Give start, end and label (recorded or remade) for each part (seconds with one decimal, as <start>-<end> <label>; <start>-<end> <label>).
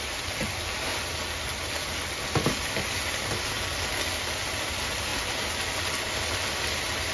0.0-7.1 recorded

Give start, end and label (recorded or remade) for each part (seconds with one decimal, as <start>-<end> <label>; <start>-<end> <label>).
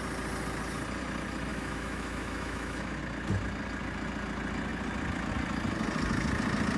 0.0-1.5 recorded; 1.5-3.0 remade; 3.0-6.8 recorded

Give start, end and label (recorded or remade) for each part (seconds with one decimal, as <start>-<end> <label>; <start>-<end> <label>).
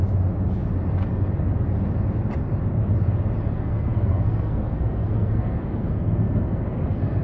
0.0-3.5 recorded; 3.5-7.2 remade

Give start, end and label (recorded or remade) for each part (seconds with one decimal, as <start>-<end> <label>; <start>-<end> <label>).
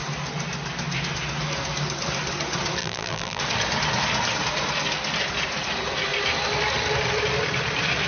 0.0-2.8 recorded; 2.8-3.4 remade; 3.4-8.1 recorded